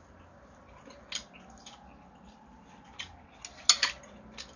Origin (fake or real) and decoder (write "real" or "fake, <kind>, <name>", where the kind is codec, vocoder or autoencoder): real